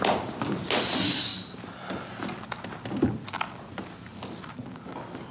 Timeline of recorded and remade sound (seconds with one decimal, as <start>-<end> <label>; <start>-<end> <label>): 0.0-5.3 recorded